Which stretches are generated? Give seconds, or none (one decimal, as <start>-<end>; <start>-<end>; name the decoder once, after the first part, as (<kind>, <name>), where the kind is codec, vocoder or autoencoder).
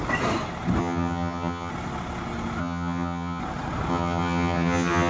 0.8-1.7 (vocoder, HiFi-GAN); 2.6-3.4; 3.9-5.1